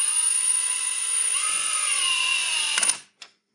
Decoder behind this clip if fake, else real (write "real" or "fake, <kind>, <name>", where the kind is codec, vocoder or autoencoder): fake, vocoder, Vocos